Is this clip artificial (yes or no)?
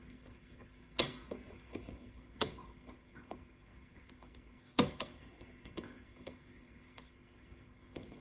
yes